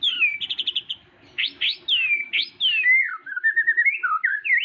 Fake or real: real